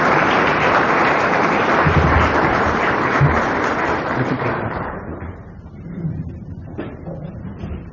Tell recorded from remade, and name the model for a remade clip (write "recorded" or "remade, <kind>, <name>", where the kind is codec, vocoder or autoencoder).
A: remade, vocoder, BigVGAN v2